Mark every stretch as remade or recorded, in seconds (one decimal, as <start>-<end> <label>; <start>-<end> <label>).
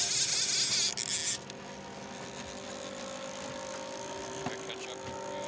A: 0.0-5.5 recorded